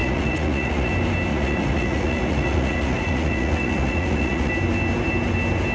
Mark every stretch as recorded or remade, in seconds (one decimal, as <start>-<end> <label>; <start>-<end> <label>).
0.0-0.9 remade; 0.9-1.3 recorded; 1.3-4.5 remade; 4.5-5.7 recorded